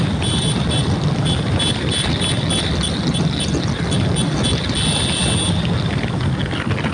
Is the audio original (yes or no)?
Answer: yes